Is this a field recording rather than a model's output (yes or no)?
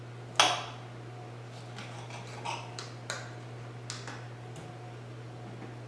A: yes